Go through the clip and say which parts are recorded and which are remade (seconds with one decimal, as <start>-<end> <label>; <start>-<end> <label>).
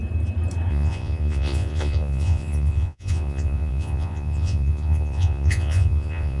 0.0-0.7 recorded; 0.7-6.4 remade